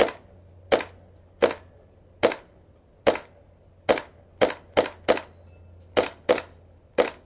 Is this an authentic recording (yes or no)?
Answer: yes